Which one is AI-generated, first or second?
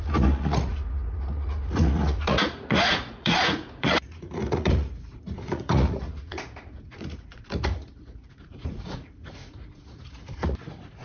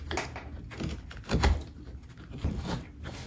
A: first